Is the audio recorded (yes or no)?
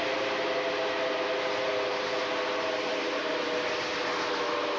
yes